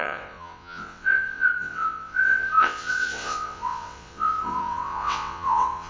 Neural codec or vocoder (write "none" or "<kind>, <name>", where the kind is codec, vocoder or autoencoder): vocoder, WaveNeXt